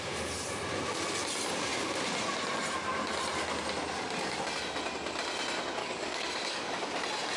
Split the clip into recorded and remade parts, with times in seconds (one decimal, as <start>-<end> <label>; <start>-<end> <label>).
0.0-5.8 recorded; 5.8-6.9 remade; 6.9-7.4 recorded